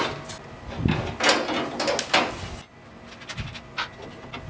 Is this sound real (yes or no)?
yes